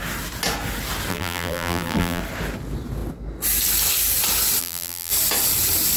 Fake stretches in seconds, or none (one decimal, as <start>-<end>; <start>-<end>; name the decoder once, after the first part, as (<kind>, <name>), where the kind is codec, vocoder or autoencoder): 1.1-2.2 (vocoder, BigVGAN v2); 4.6-5.1